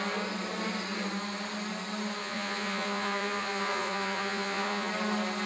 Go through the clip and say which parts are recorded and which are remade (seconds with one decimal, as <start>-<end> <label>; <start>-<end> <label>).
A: 0.0-2.2 recorded; 2.2-4.9 remade; 4.9-5.5 recorded